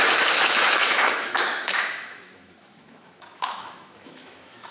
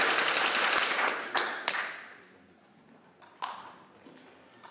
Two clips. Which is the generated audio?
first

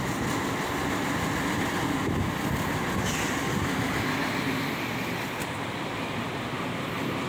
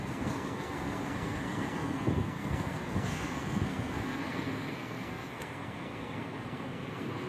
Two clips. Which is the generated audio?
second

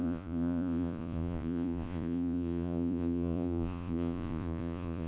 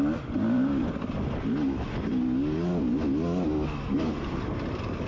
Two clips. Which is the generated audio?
first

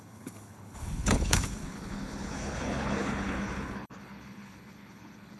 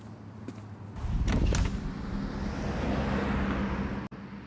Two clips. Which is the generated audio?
first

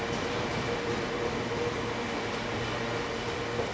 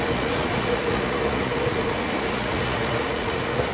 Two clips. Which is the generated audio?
second